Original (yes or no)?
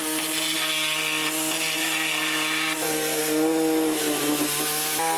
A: yes